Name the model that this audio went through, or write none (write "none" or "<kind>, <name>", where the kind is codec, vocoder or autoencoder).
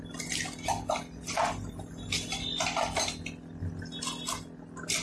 none